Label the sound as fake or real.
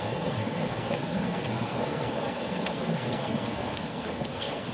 fake